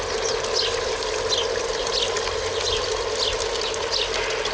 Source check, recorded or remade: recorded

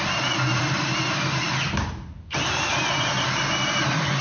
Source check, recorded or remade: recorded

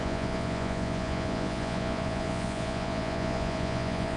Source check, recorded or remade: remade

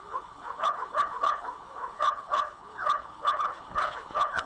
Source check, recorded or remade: remade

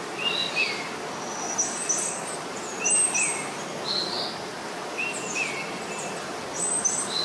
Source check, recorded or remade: recorded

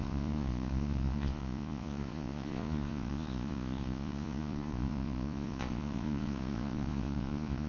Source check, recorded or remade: remade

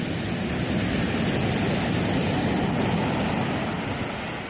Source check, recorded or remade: recorded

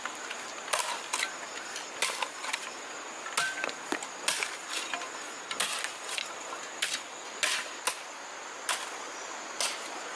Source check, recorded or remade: recorded